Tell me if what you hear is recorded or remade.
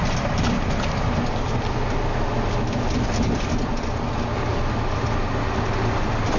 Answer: recorded